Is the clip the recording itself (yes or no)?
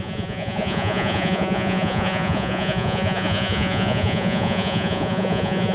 no